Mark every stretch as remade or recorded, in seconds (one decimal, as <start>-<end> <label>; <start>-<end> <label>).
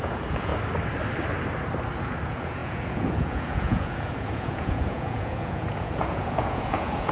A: 0.0-0.5 remade; 0.5-2.0 recorded; 2.0-7.1 remade